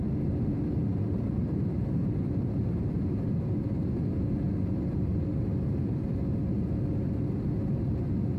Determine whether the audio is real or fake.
real